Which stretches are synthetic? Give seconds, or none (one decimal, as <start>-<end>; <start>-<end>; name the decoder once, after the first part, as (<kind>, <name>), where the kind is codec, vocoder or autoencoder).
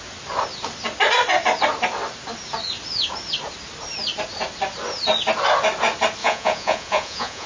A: 6.2-7.5 (vocoder, Vocos)